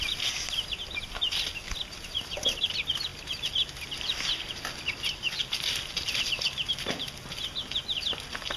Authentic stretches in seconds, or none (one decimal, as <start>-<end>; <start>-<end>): 0.0-8.6